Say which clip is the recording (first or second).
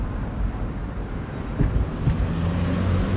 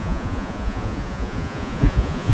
first